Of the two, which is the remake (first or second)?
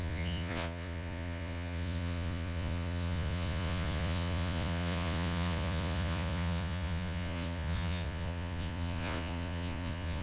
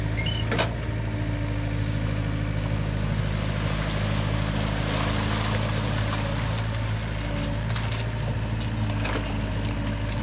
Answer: first